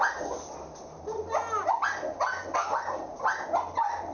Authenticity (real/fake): real